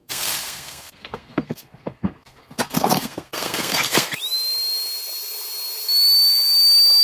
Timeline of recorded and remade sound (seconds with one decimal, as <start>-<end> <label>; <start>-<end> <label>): 0.0-4.2 remade; 4.2-7.0 recorded